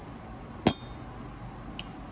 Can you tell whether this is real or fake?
real